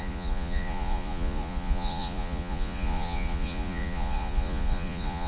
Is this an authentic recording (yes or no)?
no